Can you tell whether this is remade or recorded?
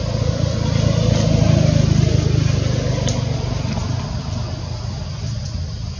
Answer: recorded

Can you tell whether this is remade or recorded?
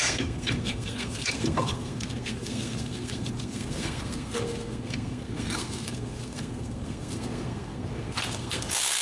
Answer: remade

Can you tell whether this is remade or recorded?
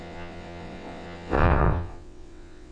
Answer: remade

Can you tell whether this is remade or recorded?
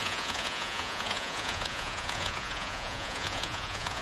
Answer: remade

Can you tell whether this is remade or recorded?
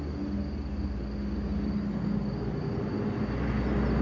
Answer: recorded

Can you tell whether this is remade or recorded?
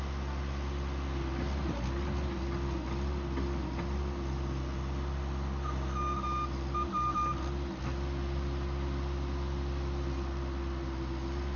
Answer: recorded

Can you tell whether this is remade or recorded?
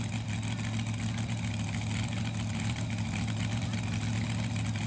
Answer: recorded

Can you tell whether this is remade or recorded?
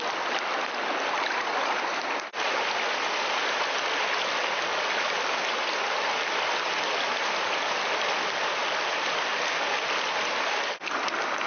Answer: recorded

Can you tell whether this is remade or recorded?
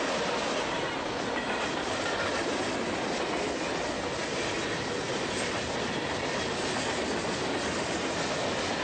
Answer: recorded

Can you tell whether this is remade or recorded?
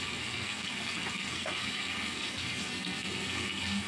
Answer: remade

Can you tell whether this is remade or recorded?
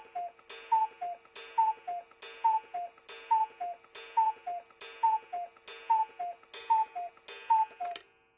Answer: recorded